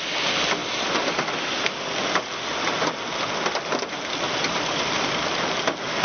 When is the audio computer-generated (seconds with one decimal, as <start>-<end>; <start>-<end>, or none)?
none